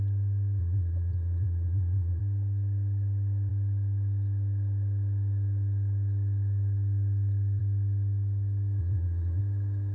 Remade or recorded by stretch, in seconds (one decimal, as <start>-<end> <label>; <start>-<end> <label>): 0.0-0.6 recorded; 0.6-2.2 remade; 2.2-8.8 recorded; 8.8-9.4 remade; 9.4-9.9 recorded